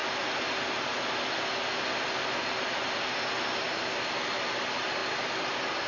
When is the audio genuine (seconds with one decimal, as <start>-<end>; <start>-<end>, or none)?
0.0-5.9